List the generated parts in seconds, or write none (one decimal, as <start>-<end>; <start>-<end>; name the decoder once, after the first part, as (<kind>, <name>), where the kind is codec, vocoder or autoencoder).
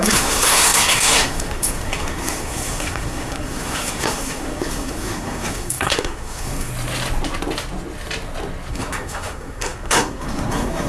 0.0-6.7 (codec, SNAC); 8.7-10.9